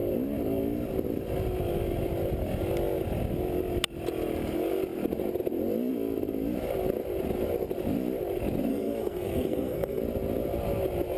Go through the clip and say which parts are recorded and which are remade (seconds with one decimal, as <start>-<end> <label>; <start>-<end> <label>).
0.0-8.7 recorded; 8.7-10.0 remade; 10.0-11.2 recorded

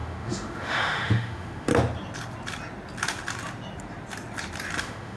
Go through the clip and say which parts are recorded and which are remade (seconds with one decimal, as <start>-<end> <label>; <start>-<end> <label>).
0.0-1.7 remade; 1.7-4.8 recorded; 4.8-5.2 remade

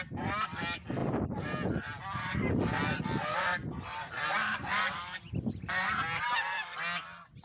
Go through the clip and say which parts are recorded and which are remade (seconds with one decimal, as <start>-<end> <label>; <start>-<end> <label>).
0.0-1.0 recorded; 1.0-1.9 remade; 1.9-3.6 recorded; 3.6-4.7 remade; 4.7-7.4 recorded

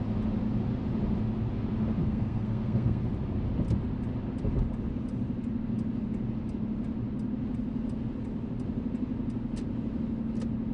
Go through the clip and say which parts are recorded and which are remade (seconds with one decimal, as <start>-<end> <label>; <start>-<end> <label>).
0.0-2.0 recorded; 2.0-3.0 remade; 3.0-10.7 recorded

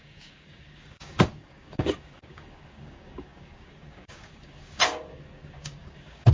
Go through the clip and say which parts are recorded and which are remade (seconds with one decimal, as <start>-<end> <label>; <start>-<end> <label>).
0.0-6.3 remade

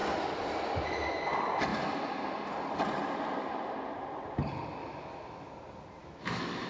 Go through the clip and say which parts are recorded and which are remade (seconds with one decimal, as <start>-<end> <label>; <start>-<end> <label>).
0.0-4.8 recorded; 4.8-5.5 remade; 5.5-6.0 recorded; 6.0-6.7 remade

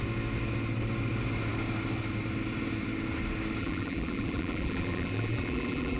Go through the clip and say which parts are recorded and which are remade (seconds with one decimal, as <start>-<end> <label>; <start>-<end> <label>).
0.0-3.6 recorded; 3.6-6.0 remade

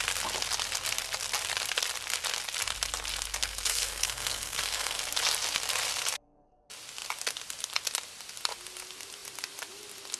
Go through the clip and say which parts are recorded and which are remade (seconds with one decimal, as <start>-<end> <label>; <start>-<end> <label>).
0.0-3.4 recorded; 3.4-5.0 remade; 5.0-10.2 recorded